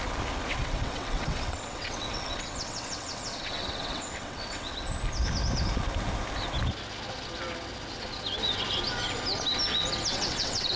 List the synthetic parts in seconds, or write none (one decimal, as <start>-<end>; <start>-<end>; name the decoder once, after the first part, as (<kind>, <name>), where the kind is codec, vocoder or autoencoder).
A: 0.5-4.9 (vocoder, WaveNeXt); 10.1-10.8